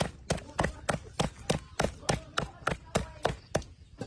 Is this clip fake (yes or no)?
no